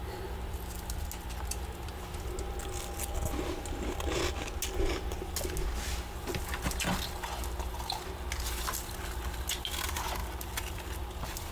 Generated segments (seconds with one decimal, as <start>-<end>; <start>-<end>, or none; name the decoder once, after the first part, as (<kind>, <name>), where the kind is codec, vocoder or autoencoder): none